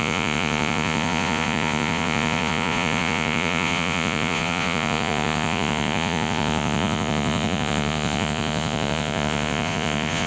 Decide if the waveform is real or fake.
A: fake